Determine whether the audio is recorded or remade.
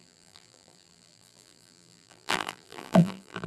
remade